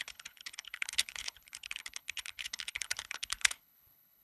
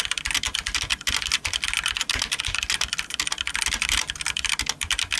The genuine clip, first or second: second